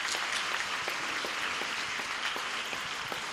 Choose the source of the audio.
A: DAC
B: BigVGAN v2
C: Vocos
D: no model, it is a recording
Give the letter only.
D